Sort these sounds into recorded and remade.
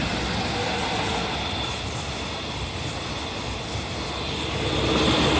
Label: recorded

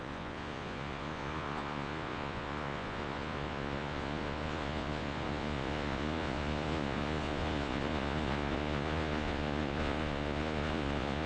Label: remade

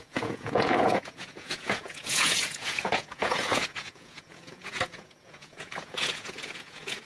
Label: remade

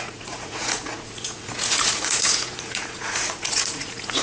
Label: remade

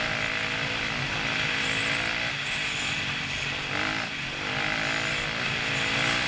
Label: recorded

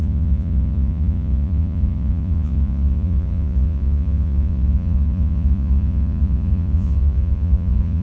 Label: remade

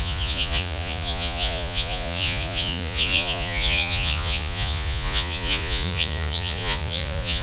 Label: remade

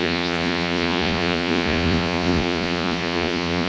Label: remade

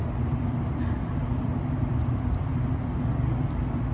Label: recorded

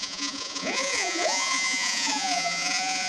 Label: remade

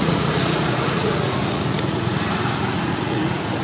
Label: remade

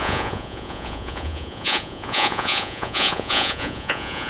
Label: remade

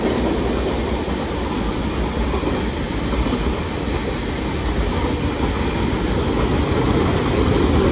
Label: recorded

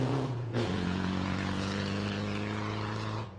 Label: remade